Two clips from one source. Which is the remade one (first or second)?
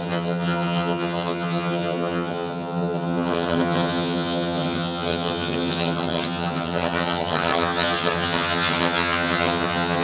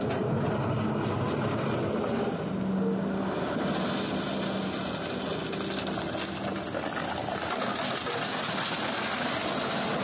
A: first